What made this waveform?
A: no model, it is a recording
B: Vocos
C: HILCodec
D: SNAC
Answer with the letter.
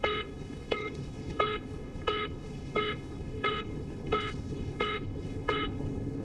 C